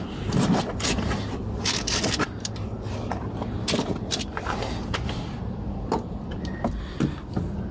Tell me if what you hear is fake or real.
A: real